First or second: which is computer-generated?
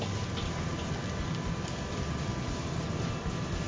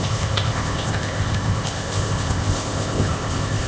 second